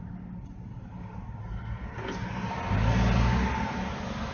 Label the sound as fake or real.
real